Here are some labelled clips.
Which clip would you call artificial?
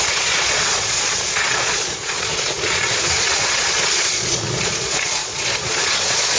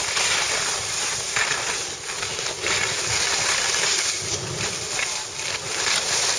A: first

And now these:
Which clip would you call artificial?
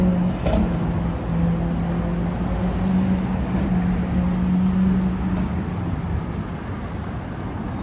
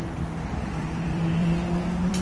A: second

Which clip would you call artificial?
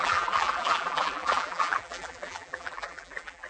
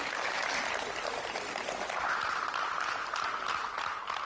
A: first